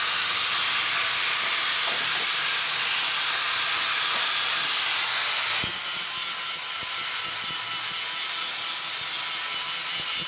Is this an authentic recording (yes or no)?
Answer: yes